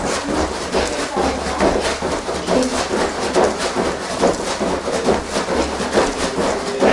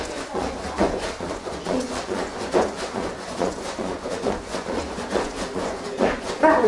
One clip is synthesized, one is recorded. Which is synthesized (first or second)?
second